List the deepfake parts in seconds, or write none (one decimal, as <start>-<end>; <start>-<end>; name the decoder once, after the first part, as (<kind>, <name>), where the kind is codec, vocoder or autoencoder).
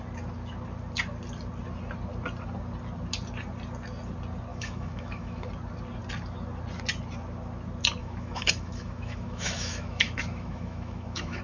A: 4.5-5.5 (autoencoder, DAC-VAE); 8.0-11.4